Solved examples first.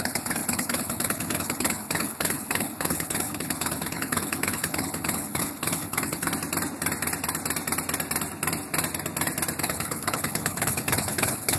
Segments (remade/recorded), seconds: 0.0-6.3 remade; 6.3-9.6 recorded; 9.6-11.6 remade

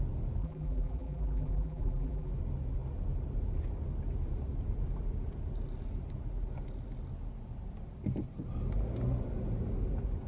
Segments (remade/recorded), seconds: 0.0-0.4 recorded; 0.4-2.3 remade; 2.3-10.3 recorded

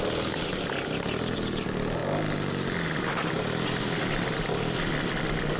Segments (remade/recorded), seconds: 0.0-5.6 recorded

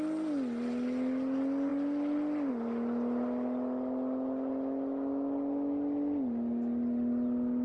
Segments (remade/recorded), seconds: 0.0-7.6 recorded